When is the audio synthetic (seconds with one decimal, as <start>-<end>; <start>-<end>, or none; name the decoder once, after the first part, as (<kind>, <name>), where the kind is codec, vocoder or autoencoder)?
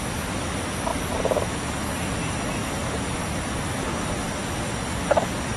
2.6-4.1 (vocoder, BigVGAN v2)